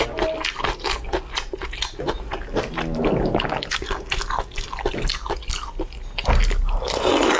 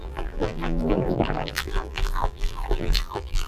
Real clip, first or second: first